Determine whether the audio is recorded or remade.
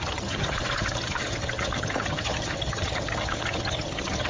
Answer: remade